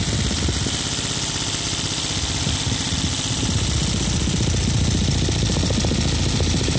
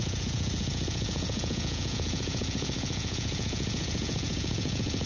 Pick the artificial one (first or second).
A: second